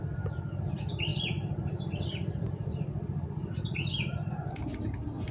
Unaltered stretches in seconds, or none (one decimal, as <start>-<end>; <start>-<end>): 0.0-1.1; 4.3-5.3